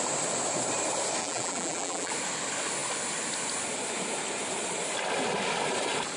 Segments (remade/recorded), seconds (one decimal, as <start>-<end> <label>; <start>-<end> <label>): 0.0-1.2 recorded; 1.2-2.1 remade; 2.1-6.2 recorded